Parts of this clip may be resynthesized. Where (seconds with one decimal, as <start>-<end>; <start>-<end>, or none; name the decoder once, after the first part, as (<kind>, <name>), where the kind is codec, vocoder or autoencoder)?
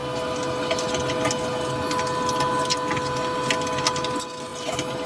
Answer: 4.5-5.1 (vocoder, BigVGAN v2)